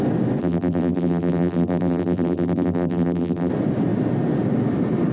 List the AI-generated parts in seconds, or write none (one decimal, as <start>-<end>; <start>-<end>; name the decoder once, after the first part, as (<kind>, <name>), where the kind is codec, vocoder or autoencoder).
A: 0.4-3.5 (vocoder, BigVGAN v2)